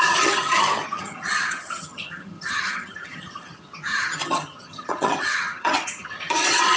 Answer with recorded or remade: remade